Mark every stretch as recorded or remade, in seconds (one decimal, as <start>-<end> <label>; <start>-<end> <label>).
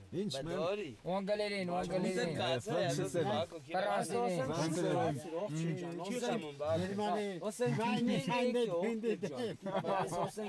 0.0-0.8 recorded; 0.8-1.4 remade; 1.4-4.7 recorded; 4.7-5.4 remade; 5.4-6.9 recorded; 6.9-8.3 remade; 8.3-10.5 recorded